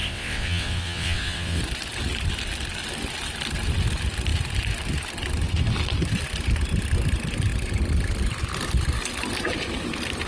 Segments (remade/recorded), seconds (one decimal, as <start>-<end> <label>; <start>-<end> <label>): 0.0-1.6 remade; 1.6-10.3 recorded

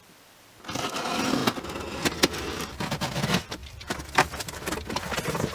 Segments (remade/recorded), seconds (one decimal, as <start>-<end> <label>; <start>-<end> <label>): 0.0-1.4 remade; 1.4-2.1 recorded; 2.1-5.5 remade

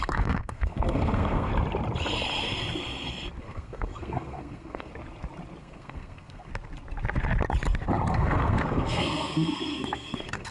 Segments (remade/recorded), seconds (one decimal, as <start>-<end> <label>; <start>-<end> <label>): 0.0-1.5 remade; 1.5-3.4 recorded; 3.4-4.9 remade; 4.9-5.6 recorded; 5.6-6.5 remade; 6.5-8.1 recorded; 8.1-10.5 remade